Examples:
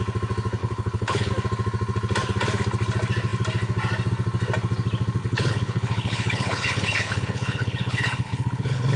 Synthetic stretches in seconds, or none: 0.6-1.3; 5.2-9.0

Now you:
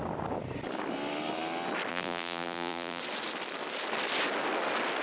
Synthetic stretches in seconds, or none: 1.9-3.0

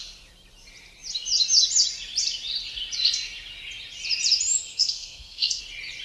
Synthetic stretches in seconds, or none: 4.7-5.6

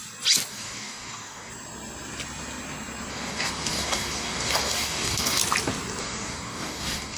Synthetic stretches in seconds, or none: 0.5-1.5; 3.1-5.4; 6.0-7.2

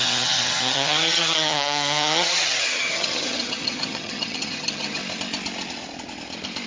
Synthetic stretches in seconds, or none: 0.0-5.0